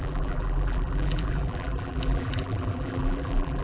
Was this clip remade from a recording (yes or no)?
yes